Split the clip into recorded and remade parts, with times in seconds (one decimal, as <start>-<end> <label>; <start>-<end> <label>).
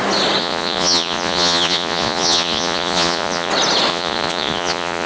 0.0-0.4 recorded; 0.4-3.5 remade; 3.5-3.9 recorded; 3.9-5.1 remade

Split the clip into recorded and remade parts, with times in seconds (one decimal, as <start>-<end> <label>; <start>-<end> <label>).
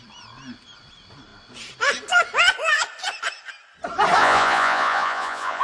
0.0-4.2 recorded; 4.2-5.6 remade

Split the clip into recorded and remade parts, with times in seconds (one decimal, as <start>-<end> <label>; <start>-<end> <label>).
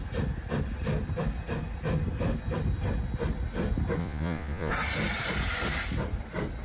0.0-4.0 recorded; 4.0-4.7 remade; 4.7-6.6 recorded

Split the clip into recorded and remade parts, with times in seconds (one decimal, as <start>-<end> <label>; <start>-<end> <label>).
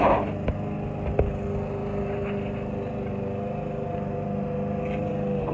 0.0-5.5 recorded